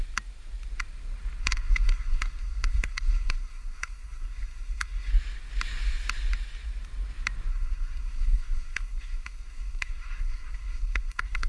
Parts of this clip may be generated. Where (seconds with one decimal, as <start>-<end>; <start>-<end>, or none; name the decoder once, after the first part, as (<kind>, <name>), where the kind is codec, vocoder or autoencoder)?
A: 1.4-5.1 (codec, SNAC); 7.5-11.5